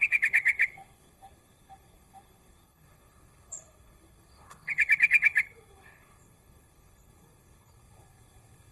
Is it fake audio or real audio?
fake